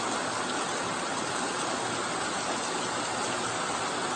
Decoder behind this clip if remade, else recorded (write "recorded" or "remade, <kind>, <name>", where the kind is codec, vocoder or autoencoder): recorded